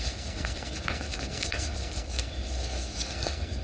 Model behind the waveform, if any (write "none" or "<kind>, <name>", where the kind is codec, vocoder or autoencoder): codec, SNAC